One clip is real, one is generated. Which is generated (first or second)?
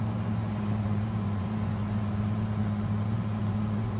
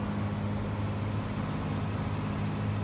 first